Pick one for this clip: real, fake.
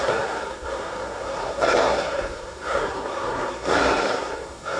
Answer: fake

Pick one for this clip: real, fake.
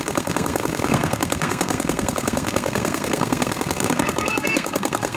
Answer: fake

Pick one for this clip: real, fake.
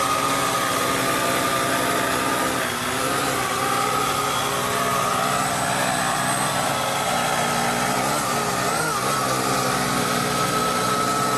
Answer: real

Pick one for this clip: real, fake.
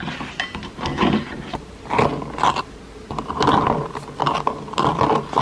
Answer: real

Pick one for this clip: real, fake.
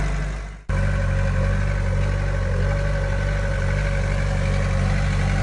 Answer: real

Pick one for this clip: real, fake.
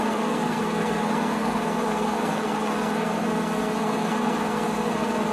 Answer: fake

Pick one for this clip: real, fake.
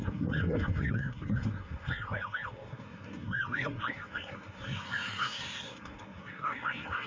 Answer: fake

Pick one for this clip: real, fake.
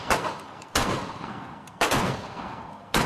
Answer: fake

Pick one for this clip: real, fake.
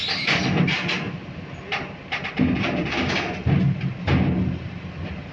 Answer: real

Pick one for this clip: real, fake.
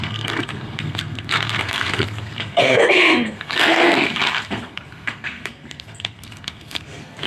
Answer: fake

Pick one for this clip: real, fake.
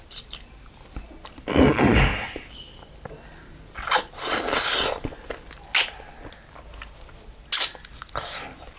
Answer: real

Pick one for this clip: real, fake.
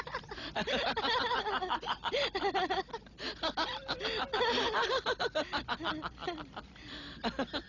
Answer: real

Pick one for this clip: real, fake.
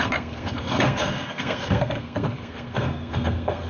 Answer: fake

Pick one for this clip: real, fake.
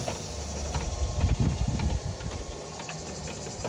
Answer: real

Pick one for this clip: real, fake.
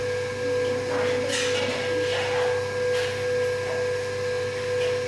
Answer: real